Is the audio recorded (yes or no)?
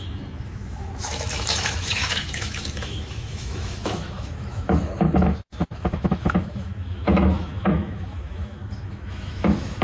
no